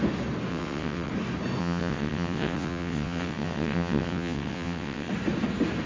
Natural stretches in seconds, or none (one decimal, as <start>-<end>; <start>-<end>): 0.0-0.5; 1.1-1.6; 5.1-5.9